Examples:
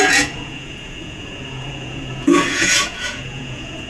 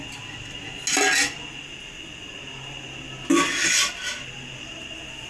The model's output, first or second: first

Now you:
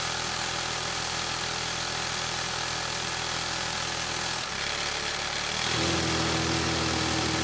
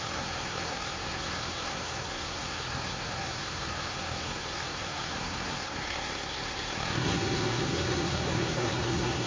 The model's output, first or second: second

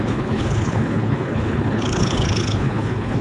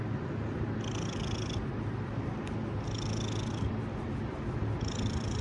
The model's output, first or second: first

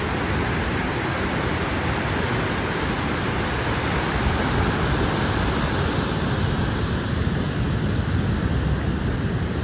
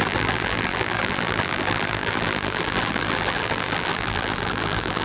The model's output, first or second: second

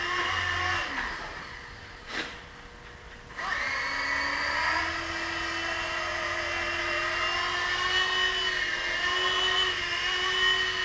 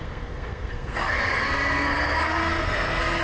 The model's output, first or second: second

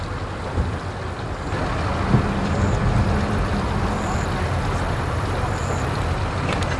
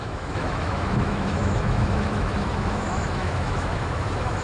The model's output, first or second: second